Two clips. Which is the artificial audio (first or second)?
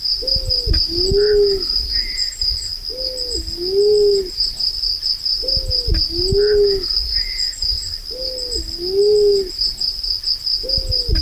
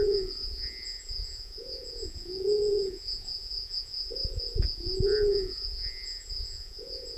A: second